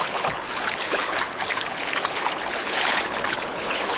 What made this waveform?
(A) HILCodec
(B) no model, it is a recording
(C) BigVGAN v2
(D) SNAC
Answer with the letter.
A